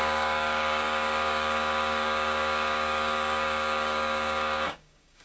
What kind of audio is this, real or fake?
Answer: fake